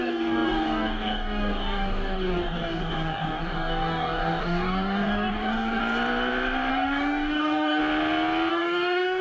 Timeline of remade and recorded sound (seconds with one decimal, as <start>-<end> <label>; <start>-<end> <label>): 0.0-5.8 remade; 5.8-6.7 recorded; 6.7-7.8 remade; 7.8-8.5 recorded; 8.5-9.2 remade